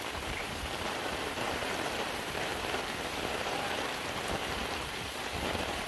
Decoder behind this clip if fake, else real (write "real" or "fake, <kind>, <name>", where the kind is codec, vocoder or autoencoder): fake, vocoder, BigVGAN v2